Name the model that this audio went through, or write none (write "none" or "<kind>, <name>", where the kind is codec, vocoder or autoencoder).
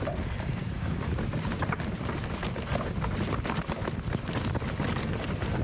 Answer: none